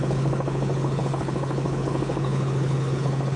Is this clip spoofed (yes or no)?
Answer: yes